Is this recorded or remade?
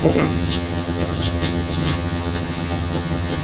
remade